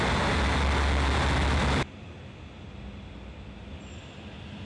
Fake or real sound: real